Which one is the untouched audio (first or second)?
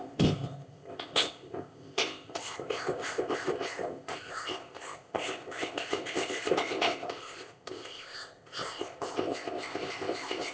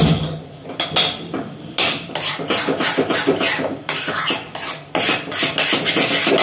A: second